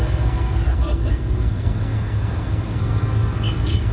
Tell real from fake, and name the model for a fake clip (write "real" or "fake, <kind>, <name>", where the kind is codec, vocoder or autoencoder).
fake, codec, SNAC